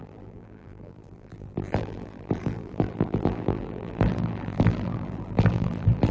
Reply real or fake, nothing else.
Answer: fake